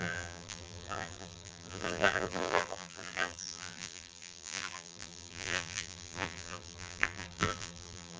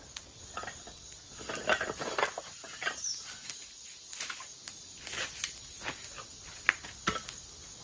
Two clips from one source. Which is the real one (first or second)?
second